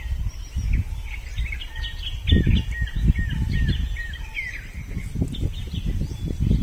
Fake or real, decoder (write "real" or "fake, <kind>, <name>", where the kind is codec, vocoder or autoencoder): real